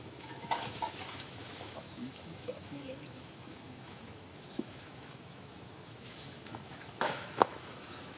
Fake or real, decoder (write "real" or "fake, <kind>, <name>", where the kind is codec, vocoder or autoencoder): fake, autoencoder, DAC-VAE